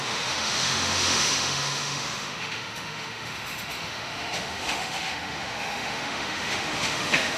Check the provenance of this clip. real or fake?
fake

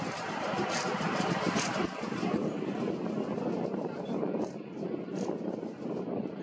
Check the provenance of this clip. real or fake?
fake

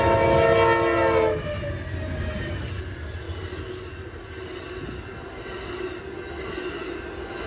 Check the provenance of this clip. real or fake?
real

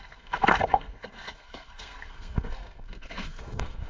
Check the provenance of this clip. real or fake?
fake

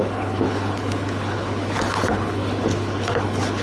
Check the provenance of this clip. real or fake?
fake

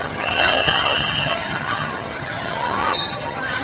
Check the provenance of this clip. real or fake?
fake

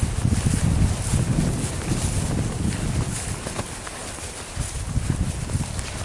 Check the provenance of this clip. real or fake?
real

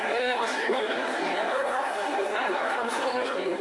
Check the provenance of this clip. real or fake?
fake